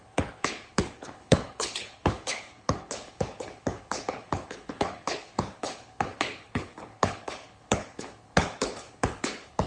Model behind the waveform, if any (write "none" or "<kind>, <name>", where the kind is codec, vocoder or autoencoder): codec, HILCodec